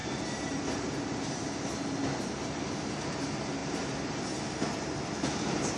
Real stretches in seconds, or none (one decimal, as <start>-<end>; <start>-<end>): 1.4-3.6; 4.2-5.8